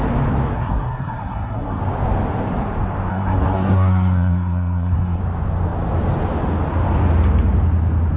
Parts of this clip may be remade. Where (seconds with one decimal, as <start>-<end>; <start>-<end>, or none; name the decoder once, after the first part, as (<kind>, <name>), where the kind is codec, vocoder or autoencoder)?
0.5-1.8 (codec, SNAC); 3.1-5.2